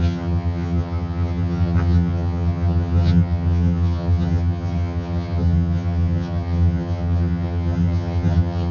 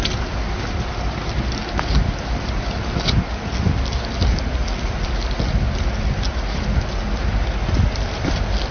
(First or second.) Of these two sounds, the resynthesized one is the first